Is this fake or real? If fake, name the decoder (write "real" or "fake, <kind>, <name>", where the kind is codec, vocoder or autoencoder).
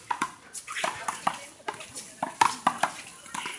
real